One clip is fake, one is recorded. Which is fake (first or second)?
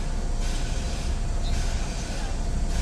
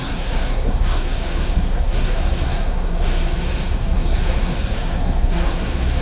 second